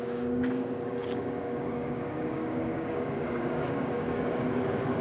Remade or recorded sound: remade